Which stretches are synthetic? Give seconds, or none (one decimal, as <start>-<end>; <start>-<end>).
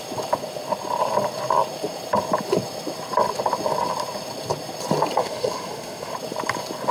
5.2-6.1